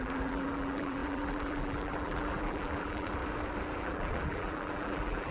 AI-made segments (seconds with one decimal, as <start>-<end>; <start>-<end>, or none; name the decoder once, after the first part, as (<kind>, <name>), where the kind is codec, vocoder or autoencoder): 0.0-3.2 (vocoder, BigVGAN v2); 3.8-5.3